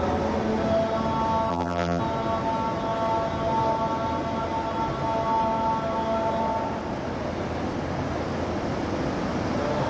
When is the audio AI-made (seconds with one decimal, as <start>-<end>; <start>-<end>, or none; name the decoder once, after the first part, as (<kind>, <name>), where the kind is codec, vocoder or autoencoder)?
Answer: 1.5-2.0 (vocoder, BigVGAN v2)